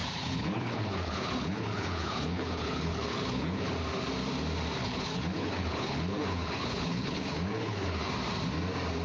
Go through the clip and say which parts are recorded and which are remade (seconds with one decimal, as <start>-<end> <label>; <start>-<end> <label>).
0.0-3.7 remade; 3.7-4.8 recorded; 4.8-8.1 remade; 8.1-9.0 recorded